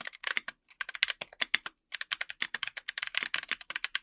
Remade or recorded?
recorded